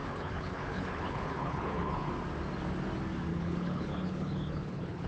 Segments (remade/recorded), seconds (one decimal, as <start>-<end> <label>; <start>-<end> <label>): 0.0-2.1 remade; 2.1-3.3 recorded; 3.3-5.1 remade